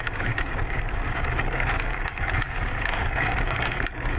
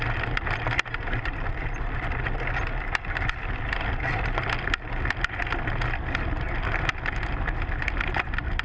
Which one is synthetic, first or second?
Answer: first